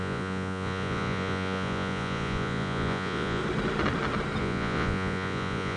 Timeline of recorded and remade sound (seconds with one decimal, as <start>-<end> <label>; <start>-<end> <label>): 0.0-3.4 remade; 3.4-4.4 recorded; 4.4-5.8 remade